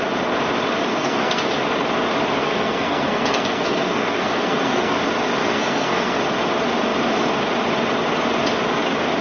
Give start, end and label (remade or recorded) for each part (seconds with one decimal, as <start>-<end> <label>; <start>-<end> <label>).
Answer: 0.0-0.9 recorded; 0.9-1.5 remade; 1.5-2.4 recorded; 2.4-5.0 remade; 5.0-5.4 recorded; 5.4-6.2 remade; 6.2-9.2 recorded